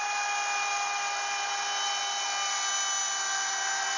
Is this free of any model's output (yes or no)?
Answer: yes